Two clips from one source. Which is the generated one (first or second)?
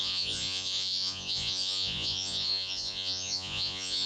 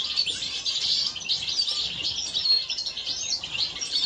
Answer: first